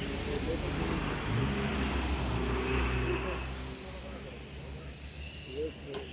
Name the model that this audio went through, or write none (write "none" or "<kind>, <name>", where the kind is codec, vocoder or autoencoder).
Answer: none